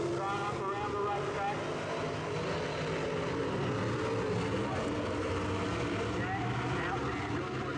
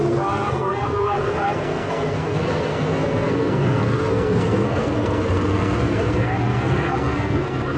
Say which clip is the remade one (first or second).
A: second